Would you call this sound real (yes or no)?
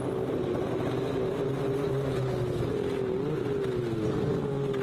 yes